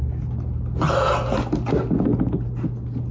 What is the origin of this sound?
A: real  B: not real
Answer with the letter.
A